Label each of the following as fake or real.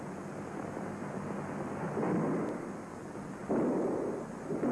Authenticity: real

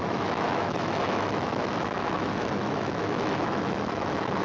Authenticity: fake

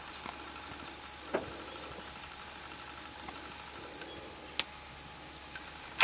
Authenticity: real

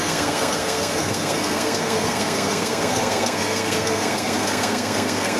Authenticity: fake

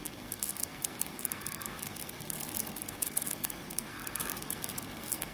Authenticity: fake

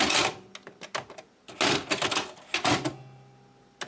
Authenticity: real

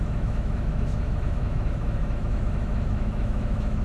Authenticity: fake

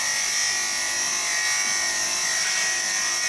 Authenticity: real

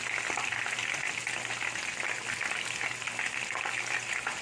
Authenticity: real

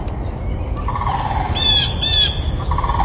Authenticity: real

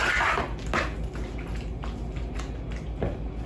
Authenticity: real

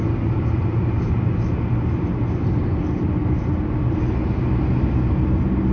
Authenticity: real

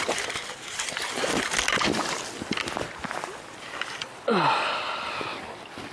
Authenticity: real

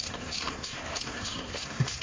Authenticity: fake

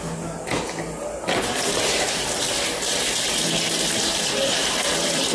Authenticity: real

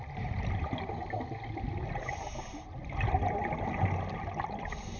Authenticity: real